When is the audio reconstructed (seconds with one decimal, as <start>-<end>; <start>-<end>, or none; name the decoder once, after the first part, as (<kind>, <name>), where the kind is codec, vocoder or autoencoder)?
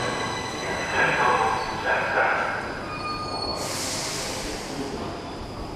none